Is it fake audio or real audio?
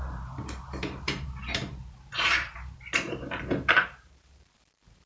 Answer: fake